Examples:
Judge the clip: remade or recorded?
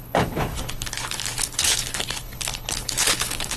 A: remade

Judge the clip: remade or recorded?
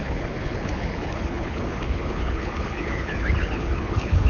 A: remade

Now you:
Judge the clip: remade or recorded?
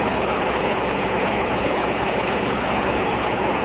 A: remade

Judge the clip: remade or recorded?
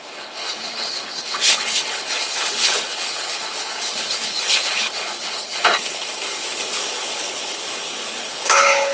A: remade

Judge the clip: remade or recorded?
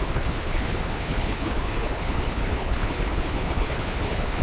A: remade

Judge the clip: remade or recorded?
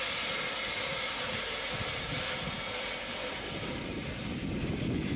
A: recorded